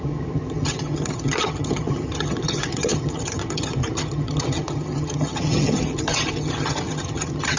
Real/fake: fake